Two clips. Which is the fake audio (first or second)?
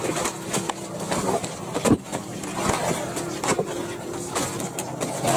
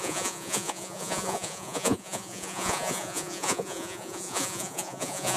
second